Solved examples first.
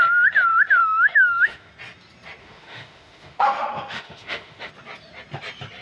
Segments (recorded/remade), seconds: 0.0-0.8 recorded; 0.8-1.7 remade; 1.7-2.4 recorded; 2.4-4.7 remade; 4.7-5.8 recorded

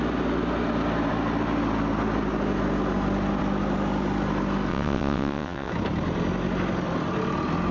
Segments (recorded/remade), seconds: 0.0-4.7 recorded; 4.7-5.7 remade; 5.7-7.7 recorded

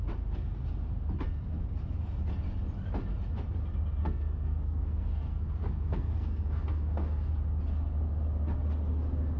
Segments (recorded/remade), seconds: 0.0-4.0 recorded; 4.0-7.3 remade; 7.3-9.4 recorded

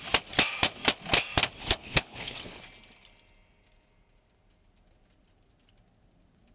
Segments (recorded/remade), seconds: 0.0-1.6 recorded; 1.6-2.6 remade; 2.6-6.5 recorded